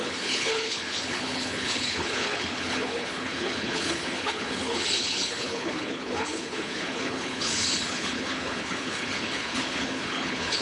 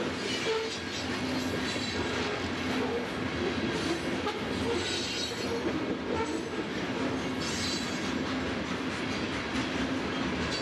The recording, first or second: second